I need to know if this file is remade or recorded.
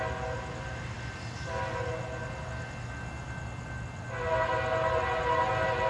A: recorded